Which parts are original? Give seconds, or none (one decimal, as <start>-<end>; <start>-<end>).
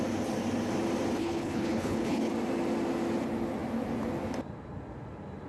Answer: 0.0-1.2; 2.3-5.5